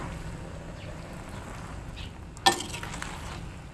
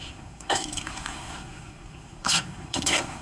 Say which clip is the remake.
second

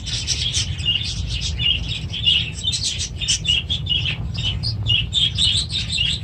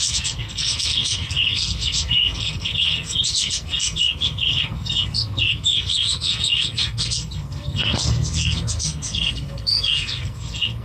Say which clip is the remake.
second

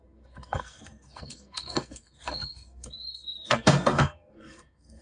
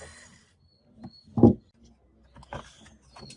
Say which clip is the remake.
first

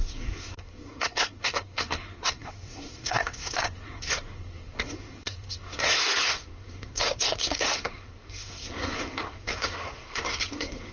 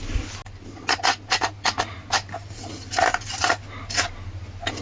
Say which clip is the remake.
first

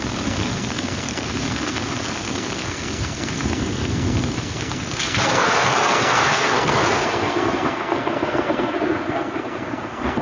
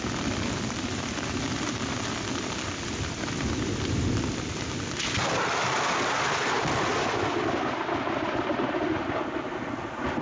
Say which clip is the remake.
first